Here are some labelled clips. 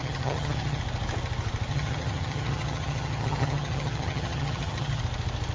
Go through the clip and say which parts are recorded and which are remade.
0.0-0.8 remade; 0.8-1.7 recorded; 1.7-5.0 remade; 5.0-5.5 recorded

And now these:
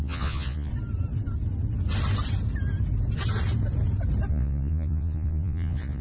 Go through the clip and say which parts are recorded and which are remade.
0.0-0.7 remade; 0.7-4.3 recorded; 4.3-6.0 remade